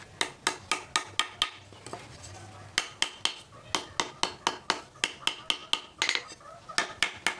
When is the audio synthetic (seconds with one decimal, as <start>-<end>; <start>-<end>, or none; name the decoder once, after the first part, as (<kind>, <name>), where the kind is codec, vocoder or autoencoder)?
none